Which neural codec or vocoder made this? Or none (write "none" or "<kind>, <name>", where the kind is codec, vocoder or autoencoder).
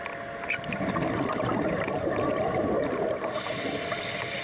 none